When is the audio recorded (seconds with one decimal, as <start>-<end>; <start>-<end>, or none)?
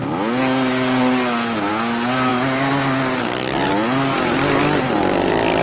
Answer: 0.0-5.6